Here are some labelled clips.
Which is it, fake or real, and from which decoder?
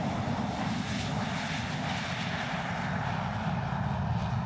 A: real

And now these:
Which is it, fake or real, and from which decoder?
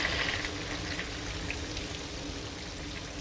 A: real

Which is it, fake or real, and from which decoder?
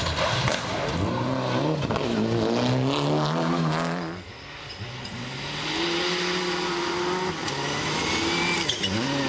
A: real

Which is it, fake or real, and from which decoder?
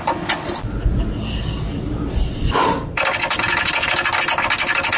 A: real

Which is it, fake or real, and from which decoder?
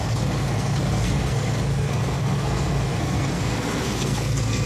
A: fake, codec, SNAC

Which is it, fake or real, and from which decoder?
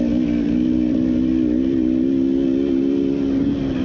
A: real